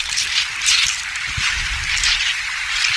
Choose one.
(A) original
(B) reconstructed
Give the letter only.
B